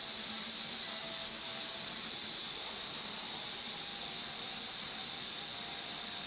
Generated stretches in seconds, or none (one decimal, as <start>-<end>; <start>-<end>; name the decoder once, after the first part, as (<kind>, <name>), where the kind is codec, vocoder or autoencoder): 0.9-1.7 (codec, DAC)